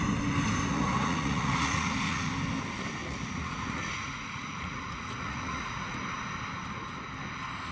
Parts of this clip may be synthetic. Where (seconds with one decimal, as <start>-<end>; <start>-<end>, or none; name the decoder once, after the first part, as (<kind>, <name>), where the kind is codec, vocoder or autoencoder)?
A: 0.7-2.3 (vocoder, Vocos); 3.0-6.0